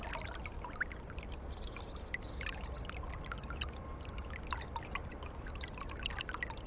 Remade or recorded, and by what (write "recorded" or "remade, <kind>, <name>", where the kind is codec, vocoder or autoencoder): recorded